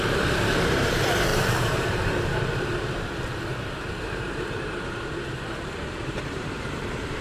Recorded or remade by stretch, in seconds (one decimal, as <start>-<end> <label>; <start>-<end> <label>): 0.0-1.3 recorded; 1.3-3.1 remade; 3.1-3.5 recorded; 3.5-6.5 remade; 6.5-7.2 recorded